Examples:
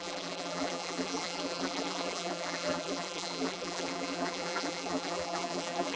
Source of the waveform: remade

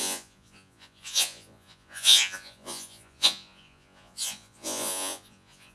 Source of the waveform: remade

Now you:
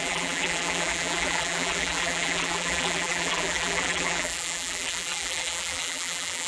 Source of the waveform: remade